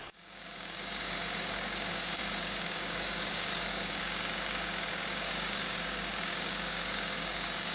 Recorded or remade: remade